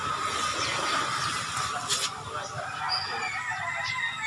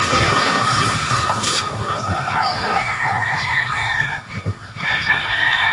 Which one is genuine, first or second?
first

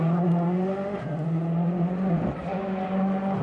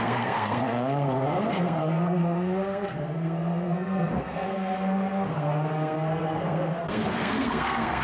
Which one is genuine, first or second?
first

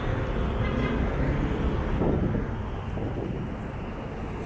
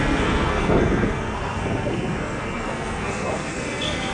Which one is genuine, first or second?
first